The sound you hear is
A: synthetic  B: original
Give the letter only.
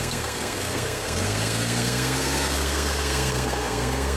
A